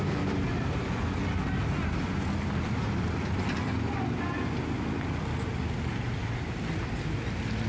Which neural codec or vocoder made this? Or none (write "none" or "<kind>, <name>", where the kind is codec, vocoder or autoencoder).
none